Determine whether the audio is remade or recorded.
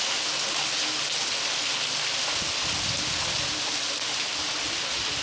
recorded